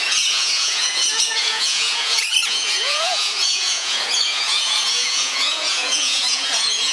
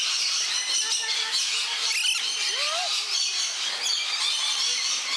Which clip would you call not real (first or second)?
first